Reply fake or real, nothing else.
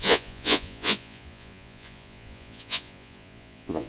fake